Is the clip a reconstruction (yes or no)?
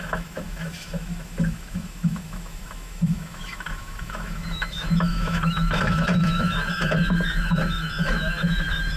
yes